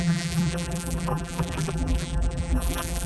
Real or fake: fake